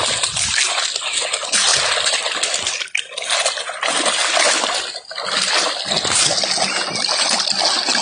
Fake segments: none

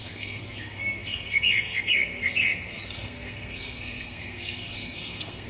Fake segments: 0.0-5.5 (codec, SNAC)

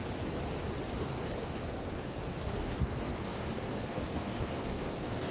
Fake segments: 1.0-5.3 (codec, SNAC)